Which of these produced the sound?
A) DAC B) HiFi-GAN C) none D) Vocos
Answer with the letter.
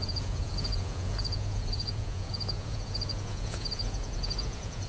D